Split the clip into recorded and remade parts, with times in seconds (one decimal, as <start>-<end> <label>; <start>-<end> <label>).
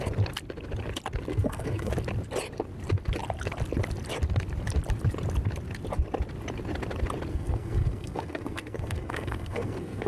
0.0-1.3 recorded; 1.3-1.9 remade; 1.9-7.3 recorded; 7.3-10.1 remade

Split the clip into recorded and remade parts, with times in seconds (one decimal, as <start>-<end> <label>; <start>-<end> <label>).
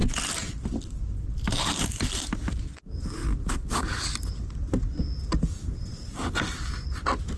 0.0-7.4 recorded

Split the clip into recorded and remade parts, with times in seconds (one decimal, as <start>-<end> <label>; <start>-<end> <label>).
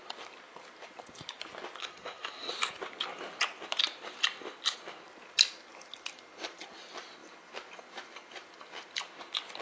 0.0-1.8 recorded; 1.8-2.5 remade; 2.5-9.6 recorded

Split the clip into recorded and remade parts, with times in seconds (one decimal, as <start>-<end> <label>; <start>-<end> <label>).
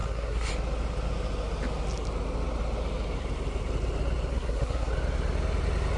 0.0-0.5 remade; 0.5-4.3 recorded; 4.3-4.9 remade; 4.9-6.0 recorded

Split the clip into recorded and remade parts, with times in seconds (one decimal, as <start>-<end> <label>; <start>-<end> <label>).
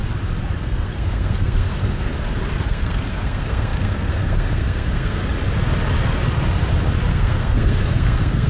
0.0-0.6 recorded; 0.6-2.1 remade; 2.1-2.7 recorded; 2.7-5.2 remade; 5.2-7.1 recorded; 7.1-8.5 remade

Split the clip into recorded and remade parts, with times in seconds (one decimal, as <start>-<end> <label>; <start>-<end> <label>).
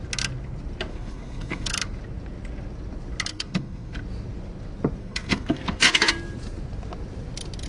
0.0-0.9 recorded; 0.9-1.7 remade; 1.7-3.3 recorded; 3.3-4.0 remade; 4.0-5.0 recorded; 5.0-6.1 remade; 6.1-7.7 recorded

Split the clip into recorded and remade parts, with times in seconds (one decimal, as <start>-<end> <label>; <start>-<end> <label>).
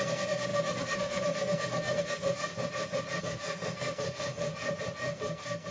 0.0-2.5 remade; 2.5-3.2 recorded; 3.2-4.5 remade; 4.5-5.0 recorded; 5.0-5.7 remade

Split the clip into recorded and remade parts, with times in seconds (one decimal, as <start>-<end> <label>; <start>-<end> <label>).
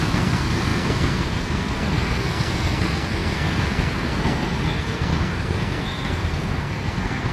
0.0-7.3 remade